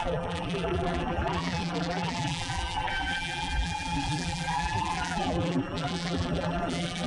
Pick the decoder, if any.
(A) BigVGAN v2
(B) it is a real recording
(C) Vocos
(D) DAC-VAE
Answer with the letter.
A